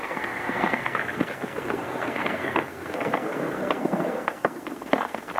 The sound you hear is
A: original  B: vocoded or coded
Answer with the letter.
B